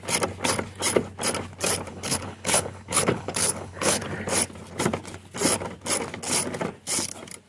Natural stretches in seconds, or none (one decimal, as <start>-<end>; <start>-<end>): 0.0-1.9; 4.0-7.5